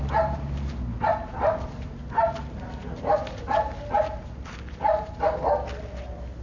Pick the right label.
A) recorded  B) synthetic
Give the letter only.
A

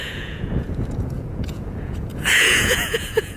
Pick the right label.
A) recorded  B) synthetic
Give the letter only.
B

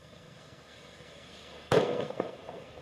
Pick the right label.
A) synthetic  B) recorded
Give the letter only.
A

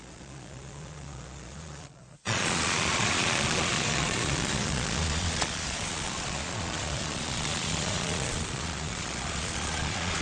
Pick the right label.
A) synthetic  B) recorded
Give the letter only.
A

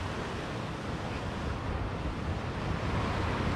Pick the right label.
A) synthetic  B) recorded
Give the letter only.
B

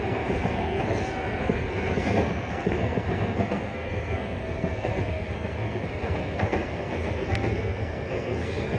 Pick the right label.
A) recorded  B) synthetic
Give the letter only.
B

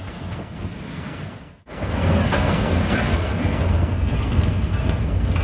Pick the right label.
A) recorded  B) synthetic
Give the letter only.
B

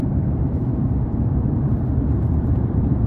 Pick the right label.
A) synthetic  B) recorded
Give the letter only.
A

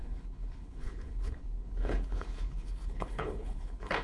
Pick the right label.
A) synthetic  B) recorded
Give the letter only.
A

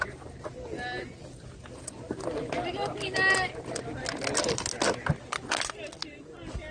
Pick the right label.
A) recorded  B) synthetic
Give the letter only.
A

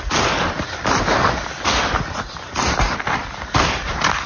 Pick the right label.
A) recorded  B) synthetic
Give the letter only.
B